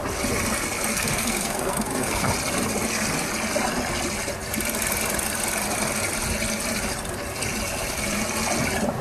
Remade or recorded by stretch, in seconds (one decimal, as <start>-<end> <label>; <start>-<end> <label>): 0.0-0.9 recorded; 0.9-2.3 remade; 2.3-9.0 recorded